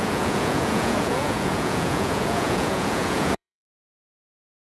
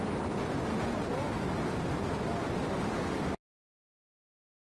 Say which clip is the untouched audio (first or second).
second